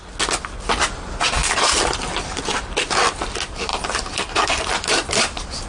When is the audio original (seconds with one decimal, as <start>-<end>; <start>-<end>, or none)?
0.0-1.4; 2.8-3.7